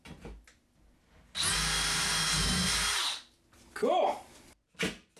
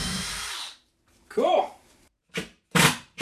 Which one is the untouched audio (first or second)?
first